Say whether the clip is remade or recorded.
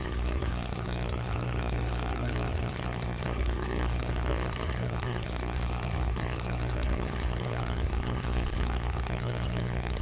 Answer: remade